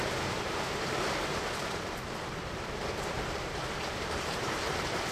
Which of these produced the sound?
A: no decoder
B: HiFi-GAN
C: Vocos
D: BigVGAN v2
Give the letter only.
D